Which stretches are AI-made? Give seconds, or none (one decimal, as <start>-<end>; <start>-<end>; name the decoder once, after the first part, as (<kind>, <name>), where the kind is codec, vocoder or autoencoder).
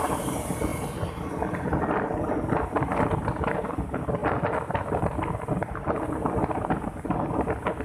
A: 0.0-0.7 (vocoder, BigVGAN v2); 1.5-7.8